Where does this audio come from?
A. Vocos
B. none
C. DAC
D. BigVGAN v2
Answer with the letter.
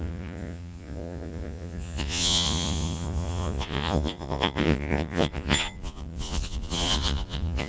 A